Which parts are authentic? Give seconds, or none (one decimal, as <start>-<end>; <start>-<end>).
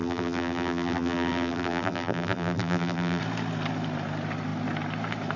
3.2-5.4